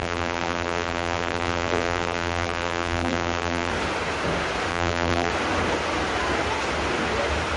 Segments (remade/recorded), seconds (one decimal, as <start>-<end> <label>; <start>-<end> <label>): 0.0-3.7 remade; 3.7-4.7 recorded; 4.7-5.3 remade; 5.3-7.6 recorded